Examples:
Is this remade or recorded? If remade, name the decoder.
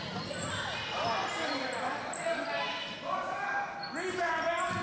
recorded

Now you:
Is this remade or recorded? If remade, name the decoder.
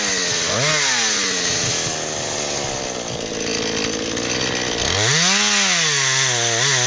recorded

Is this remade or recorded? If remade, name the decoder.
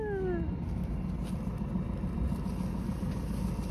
recorded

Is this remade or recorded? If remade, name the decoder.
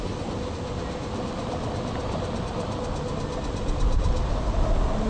recorded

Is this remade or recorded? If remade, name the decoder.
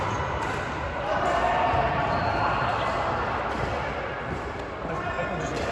recorded